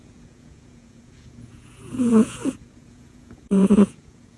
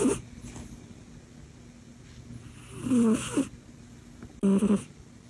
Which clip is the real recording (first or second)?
second